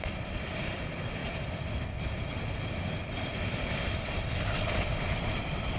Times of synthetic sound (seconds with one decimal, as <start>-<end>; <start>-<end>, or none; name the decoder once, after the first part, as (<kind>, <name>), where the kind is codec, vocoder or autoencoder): none